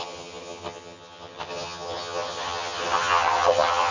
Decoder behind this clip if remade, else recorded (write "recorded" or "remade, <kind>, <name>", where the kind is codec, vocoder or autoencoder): remade, vocoder, HiFi-GAN